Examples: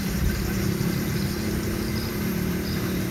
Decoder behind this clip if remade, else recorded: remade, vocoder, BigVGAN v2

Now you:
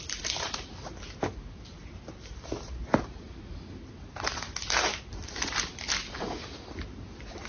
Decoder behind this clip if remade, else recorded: remade, vocoder, BigVGAN v2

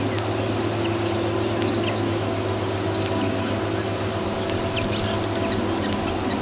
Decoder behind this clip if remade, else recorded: recorded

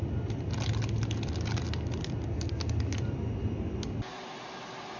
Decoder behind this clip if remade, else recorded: recorded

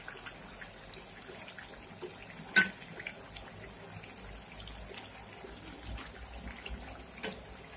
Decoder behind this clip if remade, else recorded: recorded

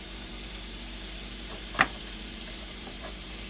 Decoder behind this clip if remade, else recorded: remade, vocoder, BigVGAN v2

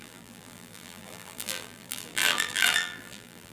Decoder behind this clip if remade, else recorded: remade, vocoder, BigVGAN v2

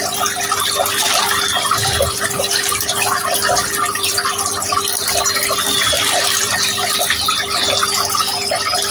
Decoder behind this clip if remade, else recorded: remade, vocoder, BigVGAN v2